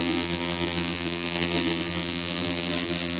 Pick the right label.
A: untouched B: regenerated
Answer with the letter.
B